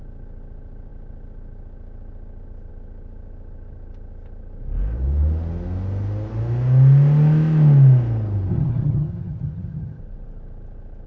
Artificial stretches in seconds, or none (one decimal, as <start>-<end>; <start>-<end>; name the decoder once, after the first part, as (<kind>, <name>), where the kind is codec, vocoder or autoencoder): 8.5-10.0 (vocoder, HiFi-GAN)